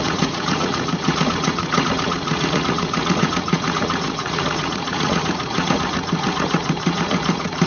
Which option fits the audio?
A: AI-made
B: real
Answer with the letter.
A